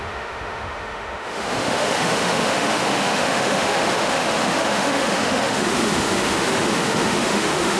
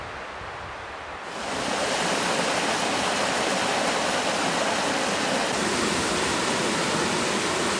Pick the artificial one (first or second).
first